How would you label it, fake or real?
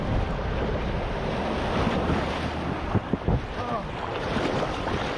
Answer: real